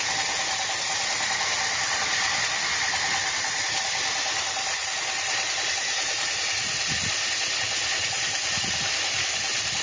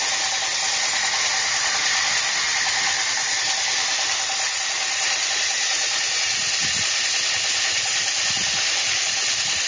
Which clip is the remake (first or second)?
first